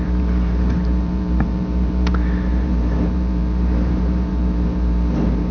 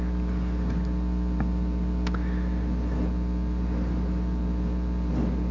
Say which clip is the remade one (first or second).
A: first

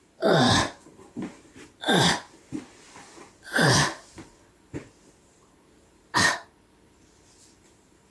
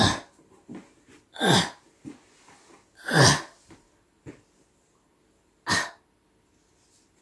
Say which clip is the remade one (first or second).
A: first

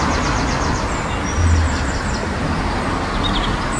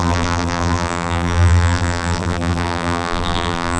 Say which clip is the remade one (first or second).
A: second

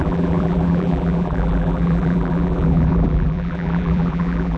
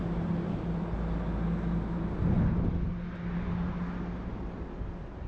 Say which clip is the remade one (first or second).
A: first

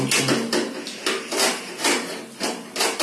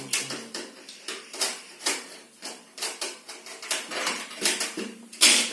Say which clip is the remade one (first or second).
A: second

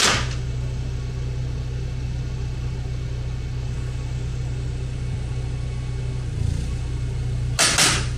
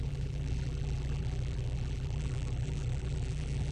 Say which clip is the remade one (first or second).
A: second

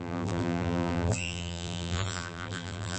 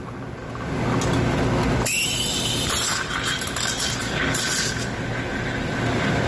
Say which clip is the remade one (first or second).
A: first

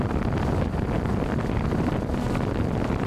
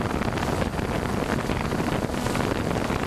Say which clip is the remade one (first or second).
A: first